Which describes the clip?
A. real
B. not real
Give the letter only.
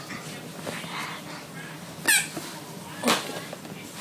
A